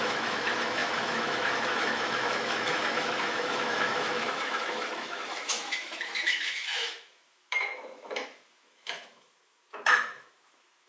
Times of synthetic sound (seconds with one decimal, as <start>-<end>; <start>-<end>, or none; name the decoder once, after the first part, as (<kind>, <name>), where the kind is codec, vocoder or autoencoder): 0.0-10.9 (autoencoder, DAC-VAE)